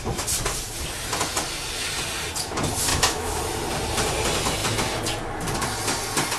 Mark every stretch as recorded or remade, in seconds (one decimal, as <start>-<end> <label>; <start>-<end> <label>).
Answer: 0.0-2.9 recorded; 2.9-3.4 remade; 3.4-6.4 recorded